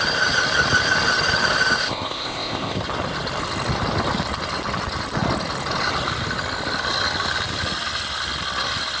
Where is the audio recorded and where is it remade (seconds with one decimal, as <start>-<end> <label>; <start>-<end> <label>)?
0.0-1.8 recorded; 1.8-2.8 remade; 2.8-9.0 recorded